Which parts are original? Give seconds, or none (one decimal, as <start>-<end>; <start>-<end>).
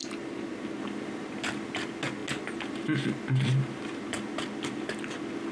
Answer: 0.0-5.5